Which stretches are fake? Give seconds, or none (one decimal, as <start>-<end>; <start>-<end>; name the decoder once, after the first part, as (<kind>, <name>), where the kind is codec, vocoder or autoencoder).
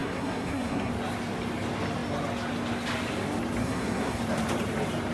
0.0-0.9 (codec, SNAC); 3.6-4.2